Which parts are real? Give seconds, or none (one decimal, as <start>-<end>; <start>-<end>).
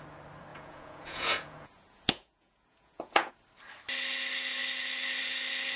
0.0-0.5; 3.3-5.8